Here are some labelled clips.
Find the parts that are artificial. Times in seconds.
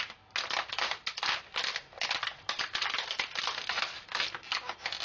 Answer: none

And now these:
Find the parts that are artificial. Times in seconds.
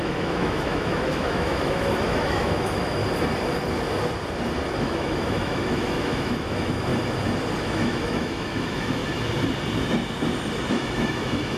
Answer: 0.0-3.0 (autoencoder, DAC-VAE); 4.8-6.9; 7.6-9.0; 10.7-11.6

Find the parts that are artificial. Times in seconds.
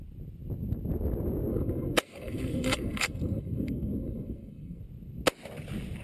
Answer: 1.5-4.8 (codec, SNAC)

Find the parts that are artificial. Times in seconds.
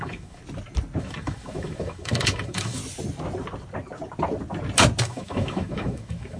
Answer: 0.0-0.4 (autoencoder, DAC-VAE); 1.0-2.8; 5.0-6.4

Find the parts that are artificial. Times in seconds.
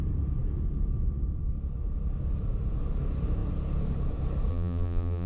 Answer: 4.5-5.3 (vocoder, BigVGAN v2)